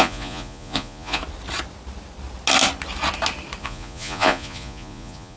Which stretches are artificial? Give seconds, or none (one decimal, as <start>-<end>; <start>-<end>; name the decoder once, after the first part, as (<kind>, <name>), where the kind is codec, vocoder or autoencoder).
0.0-1.2 (vocoder, Vocos); 3.6-5.4